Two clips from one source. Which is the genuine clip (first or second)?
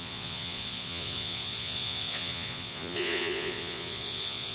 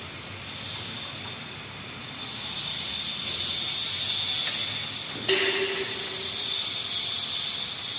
second